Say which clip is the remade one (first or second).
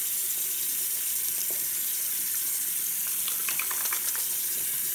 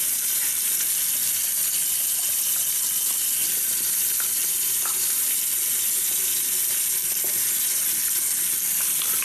first